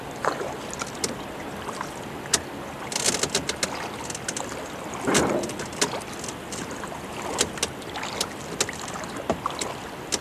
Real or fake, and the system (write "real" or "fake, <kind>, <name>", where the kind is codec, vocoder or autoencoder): real